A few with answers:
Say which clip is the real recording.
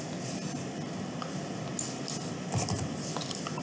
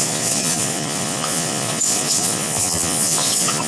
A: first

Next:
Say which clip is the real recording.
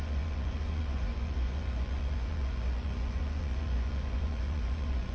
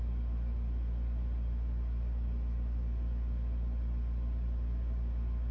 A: second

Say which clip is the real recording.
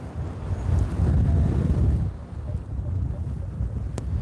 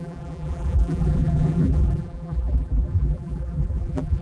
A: first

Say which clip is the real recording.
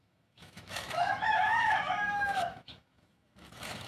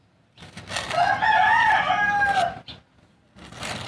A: second